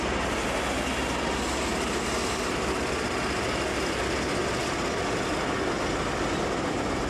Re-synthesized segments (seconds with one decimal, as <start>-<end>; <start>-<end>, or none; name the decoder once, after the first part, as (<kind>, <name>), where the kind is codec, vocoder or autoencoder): none